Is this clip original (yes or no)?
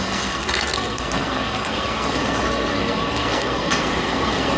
no